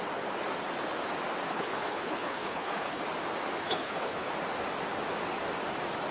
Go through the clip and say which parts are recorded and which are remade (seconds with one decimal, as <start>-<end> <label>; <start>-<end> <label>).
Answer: 0.0-1.5 recorded; 1.5-3.0 remade; 3.0-3.6 recorded; 3.6-4.3 remade; 4.3-6.1 recorded